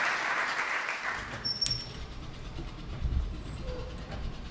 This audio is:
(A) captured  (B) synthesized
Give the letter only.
B